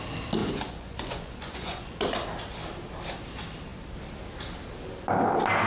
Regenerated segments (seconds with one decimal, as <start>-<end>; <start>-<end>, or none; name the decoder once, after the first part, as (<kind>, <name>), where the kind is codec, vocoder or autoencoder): 0.4-1.9 (vocoder, Vocos)